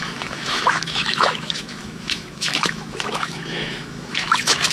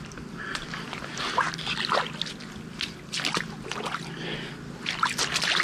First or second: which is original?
second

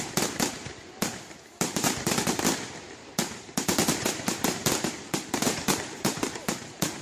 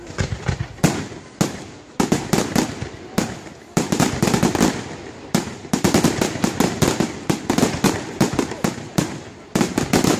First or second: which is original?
second